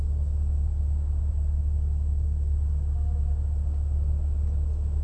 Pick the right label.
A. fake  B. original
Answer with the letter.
B